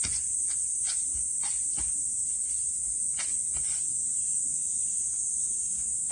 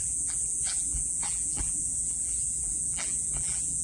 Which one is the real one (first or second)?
first